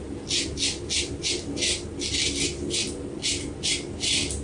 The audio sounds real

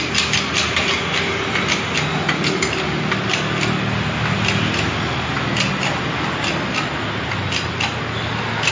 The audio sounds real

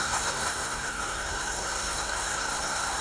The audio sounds fake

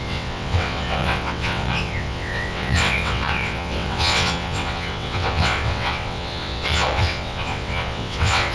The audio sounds fake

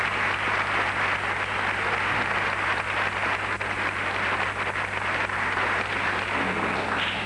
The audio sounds real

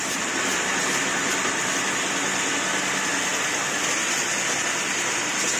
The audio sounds real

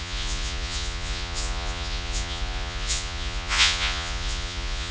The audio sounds fake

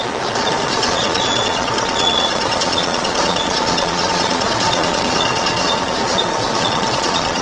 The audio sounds fake